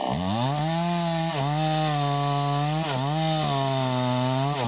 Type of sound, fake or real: real